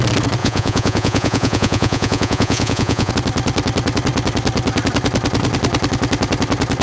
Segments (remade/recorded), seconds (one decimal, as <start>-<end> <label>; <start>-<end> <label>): 0.0-0.4 recorded; 0.4-3.1 remade; 3.1-6.8 recorded